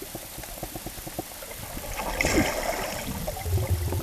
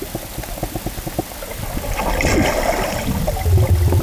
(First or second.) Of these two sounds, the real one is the second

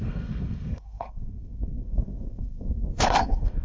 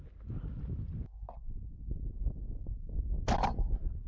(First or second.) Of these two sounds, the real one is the second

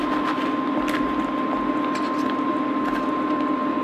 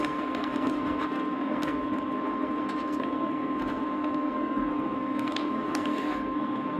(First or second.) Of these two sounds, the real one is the first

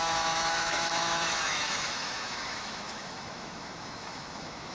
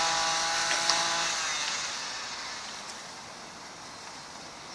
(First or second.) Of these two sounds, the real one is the second